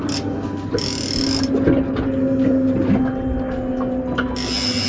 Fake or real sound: real